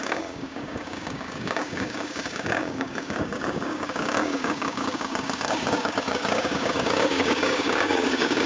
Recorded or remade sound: remade